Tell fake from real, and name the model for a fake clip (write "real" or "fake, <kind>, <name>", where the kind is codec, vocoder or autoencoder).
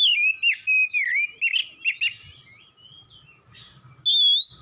real